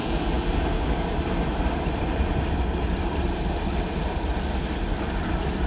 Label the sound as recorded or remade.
recorded